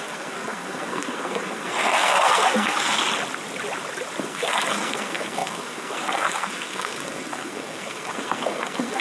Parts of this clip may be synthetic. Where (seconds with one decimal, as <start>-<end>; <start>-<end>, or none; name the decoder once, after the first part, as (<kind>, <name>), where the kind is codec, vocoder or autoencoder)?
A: 0.0-3.0 (codec, SNAC); 4.2-9.0